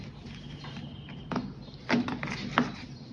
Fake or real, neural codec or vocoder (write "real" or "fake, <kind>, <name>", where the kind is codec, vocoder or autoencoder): real